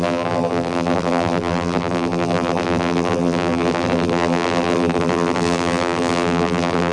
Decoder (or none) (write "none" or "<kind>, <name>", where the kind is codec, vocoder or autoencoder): vocoder, BigVGAN v2